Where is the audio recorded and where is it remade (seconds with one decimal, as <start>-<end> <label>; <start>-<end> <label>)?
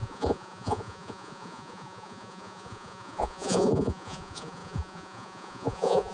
0.0-6.1 remade